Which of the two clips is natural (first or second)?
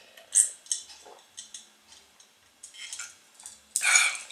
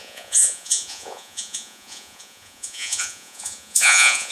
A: first